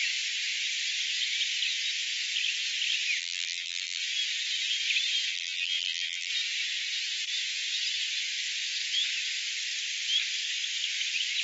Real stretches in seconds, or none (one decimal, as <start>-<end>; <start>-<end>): 0.0-3.2; 4.0-5.3; 6.3-11.4